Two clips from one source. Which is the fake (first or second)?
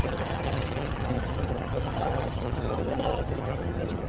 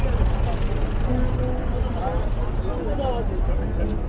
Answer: first